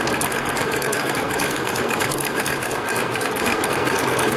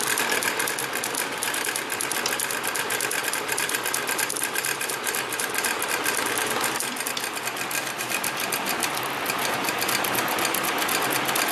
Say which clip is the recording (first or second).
second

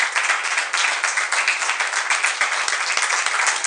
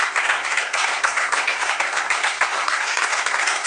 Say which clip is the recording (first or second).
first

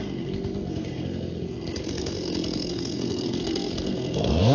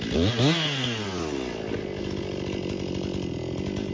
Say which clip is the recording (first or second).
second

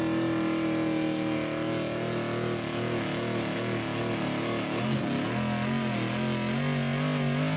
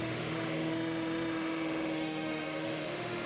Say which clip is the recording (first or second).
first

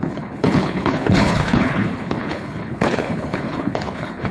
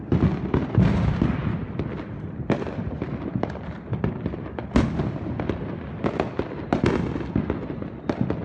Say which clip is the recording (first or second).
second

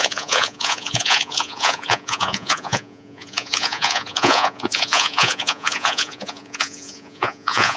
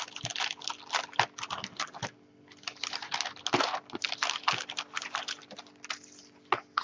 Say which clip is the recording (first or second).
second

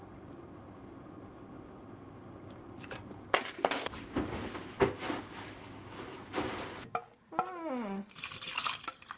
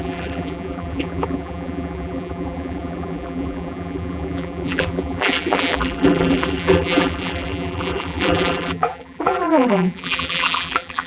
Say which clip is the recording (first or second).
first